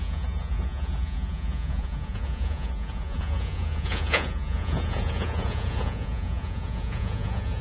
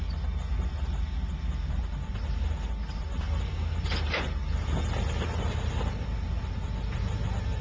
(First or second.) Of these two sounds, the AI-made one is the first